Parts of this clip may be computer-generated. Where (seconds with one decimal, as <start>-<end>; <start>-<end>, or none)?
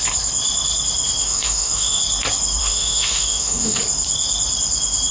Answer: 1.2-2.0; 2.6-3.8